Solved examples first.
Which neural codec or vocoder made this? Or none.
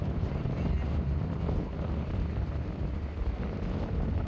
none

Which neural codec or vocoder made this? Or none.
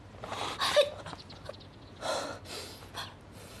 none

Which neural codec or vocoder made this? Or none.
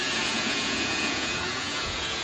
vocoder, Vocos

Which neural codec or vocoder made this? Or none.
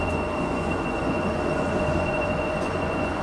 vocoder, Vocos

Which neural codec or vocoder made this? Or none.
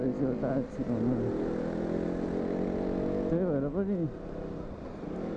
none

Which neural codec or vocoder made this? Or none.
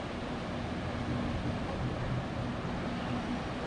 none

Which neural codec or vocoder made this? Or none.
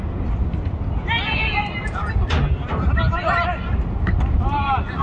none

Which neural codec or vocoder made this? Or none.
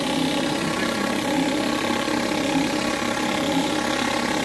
none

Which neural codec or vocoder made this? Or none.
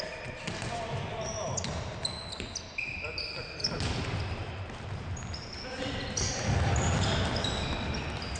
none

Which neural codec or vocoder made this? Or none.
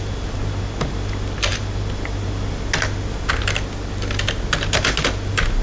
none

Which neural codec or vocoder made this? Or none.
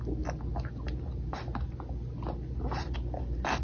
none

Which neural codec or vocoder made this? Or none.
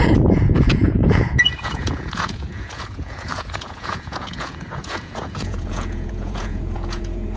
vocoder, Vocos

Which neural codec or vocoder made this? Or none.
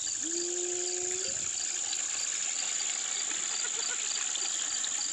none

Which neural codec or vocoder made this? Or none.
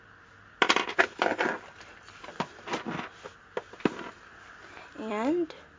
none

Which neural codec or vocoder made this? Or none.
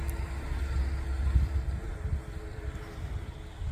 none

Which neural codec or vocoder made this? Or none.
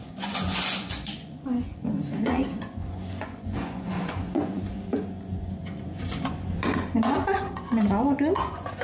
vocoder, Vocos